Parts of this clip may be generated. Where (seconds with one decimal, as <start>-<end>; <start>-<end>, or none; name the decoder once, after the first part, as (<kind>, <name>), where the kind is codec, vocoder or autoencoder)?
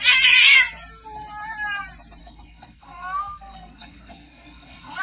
2.2-5.0 (codec, SNAC)